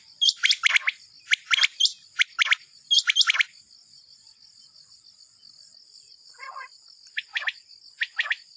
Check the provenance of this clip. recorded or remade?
recorded